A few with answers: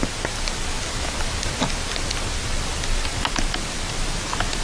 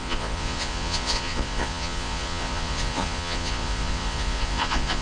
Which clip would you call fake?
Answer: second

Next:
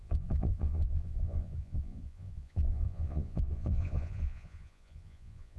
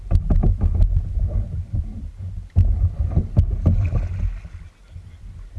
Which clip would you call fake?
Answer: first